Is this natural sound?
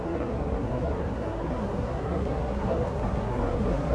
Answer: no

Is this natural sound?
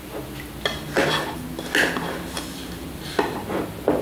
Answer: yes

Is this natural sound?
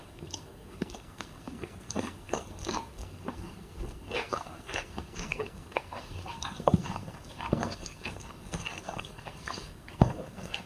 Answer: no